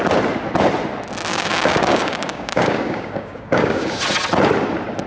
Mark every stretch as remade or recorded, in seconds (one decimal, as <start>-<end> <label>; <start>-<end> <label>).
0.0-1.3 recorded; 1.3-4.0 remade; 4.0-5.1 recorded